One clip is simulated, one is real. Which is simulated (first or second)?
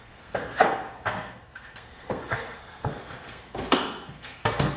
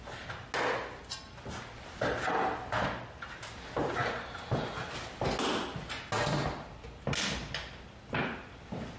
first